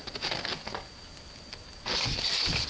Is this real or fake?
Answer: real